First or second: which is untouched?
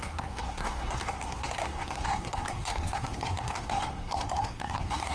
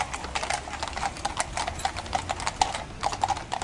second